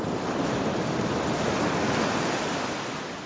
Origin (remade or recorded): recorded